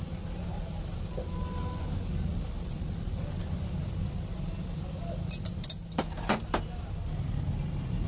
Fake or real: real